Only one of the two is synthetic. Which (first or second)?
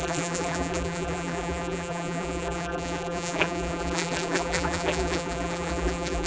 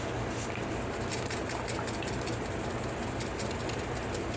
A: first